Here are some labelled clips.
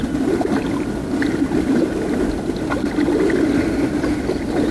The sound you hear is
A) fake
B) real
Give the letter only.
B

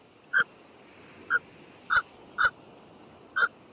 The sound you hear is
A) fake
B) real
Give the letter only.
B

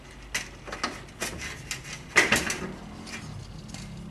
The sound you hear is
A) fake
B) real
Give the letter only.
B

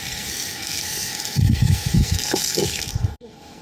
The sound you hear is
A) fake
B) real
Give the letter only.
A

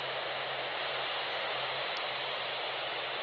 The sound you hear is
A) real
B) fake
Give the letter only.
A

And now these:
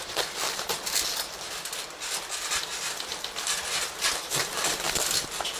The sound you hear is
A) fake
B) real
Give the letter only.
B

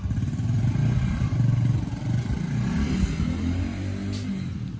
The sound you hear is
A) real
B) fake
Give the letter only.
A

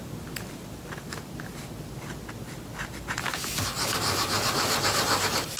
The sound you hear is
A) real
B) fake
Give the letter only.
A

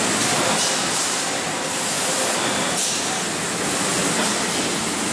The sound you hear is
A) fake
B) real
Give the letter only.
B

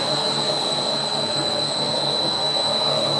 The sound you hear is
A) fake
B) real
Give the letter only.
A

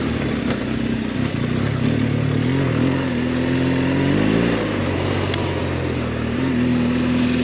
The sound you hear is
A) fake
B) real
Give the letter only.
B